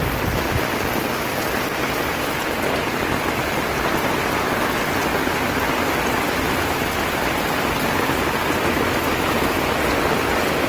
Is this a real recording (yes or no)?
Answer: yes